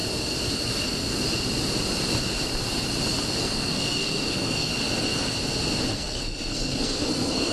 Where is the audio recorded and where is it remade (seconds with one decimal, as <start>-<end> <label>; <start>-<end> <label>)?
0.0-3.4 recorded; 3.4-4.7 remade; 4.7-5.9 recorded; 5.9-7.5 remade